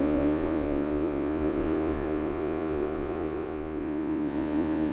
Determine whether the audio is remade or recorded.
remade